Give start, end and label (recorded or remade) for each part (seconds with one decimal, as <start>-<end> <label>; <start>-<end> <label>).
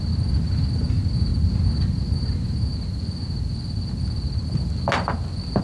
0.0-5.6 recorded